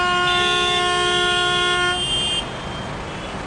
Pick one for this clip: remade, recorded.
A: recorded